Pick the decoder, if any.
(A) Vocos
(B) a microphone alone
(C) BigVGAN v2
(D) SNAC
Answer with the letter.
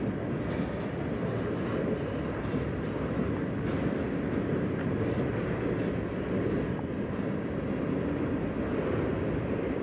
B